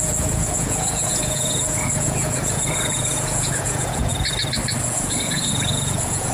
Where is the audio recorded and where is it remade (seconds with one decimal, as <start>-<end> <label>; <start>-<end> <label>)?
0.0-4.1 remade; 4.1-4.8 recorded; 4.8-6.3 remade